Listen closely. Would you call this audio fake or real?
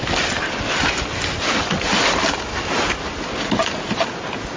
real